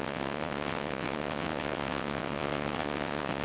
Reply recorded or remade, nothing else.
remade